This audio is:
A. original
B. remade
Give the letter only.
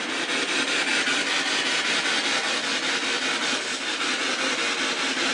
A